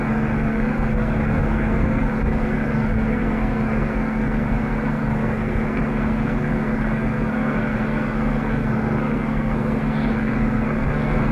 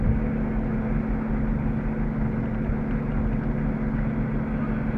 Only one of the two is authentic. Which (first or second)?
second